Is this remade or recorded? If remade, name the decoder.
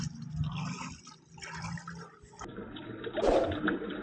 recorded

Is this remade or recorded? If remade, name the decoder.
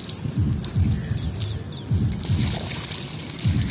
recorded